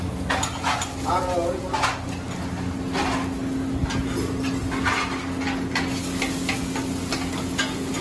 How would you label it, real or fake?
real